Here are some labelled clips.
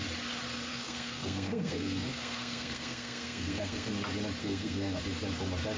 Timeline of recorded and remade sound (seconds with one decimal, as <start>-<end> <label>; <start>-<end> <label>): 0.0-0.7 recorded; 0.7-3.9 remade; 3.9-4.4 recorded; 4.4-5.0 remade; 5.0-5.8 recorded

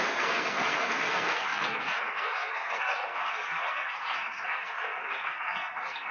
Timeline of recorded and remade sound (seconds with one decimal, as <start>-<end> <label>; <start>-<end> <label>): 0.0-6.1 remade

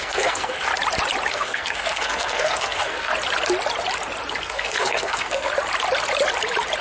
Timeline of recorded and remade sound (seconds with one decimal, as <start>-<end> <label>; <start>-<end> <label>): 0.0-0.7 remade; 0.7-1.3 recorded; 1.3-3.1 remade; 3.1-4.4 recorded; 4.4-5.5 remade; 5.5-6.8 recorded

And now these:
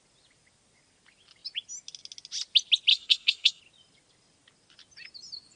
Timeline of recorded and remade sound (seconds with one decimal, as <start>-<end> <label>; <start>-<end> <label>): 0.0-2.9 recorded; 2.9-3.6 remade; 3.6-5.6 recorded

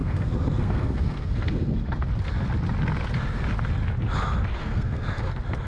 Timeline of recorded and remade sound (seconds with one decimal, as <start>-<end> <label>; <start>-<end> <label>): 0.0-2.0 remade; 2.0-4.6 recorded; 4.6-5.3 remade; 5.3-5.7 recorded

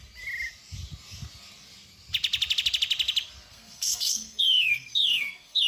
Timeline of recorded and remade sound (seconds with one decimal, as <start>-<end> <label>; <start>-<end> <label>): 0.0-3.5 recorded; 3.5-5.7 remade

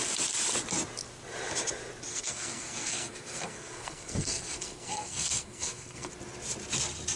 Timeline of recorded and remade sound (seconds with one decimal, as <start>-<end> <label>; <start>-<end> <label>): 0.0-2.1 recorded; 2.1-6.1 remade; 6.1-7.2 recorded